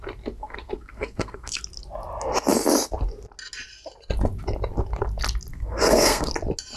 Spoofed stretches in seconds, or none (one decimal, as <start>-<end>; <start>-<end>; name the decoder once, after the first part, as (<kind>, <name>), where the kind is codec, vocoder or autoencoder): 0.4-1.6 (codec, SNAC); 5.5-6.3